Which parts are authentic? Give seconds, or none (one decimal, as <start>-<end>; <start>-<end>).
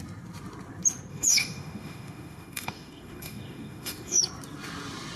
0.0-1.1; 4.2-5.2